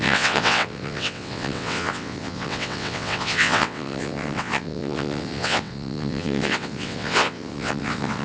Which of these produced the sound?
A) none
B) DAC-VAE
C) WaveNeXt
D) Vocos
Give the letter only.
C